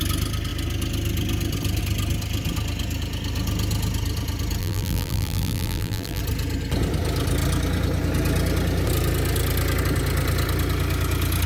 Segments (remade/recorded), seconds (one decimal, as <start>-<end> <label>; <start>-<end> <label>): 0.0-4.6 recorded; 4.6-6.2 remade; 6.2-11.5 recorded